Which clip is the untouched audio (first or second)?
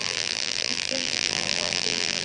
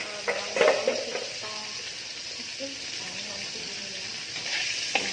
second